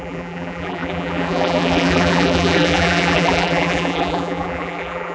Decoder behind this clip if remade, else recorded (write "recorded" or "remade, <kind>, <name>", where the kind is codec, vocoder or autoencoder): remade, vocoder, BigVGAN v2